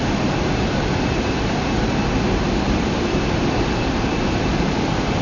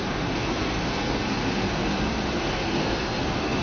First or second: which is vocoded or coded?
second